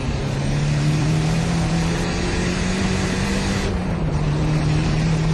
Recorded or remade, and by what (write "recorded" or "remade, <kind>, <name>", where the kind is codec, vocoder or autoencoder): remade, vocoder, BigVGAN v2